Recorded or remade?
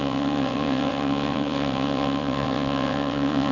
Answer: remade